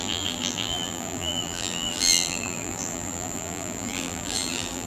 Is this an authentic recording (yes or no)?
no